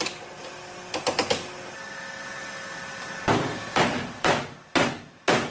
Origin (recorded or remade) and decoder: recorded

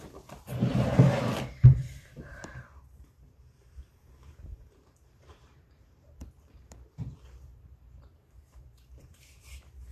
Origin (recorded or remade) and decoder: remade, vocoder, BigVGAN v2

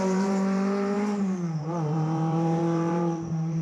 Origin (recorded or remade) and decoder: remade, vocoder, BigVGAN v2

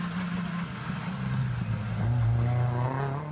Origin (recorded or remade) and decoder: recorded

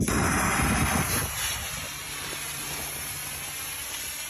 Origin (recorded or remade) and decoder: recorded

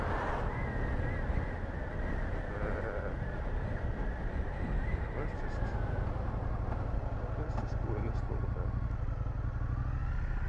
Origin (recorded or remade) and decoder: recorded